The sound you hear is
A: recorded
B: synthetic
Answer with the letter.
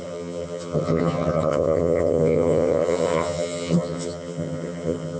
B